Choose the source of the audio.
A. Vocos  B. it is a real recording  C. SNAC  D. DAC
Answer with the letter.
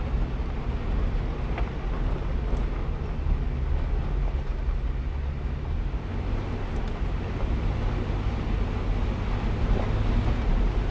B